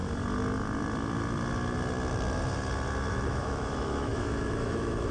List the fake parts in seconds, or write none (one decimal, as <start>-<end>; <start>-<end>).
3.1-5.1